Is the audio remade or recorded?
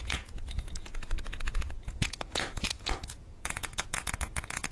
remade